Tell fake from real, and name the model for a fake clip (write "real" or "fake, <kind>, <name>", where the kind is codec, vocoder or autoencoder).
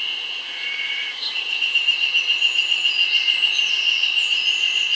fake, vocoder, BigVGAN v2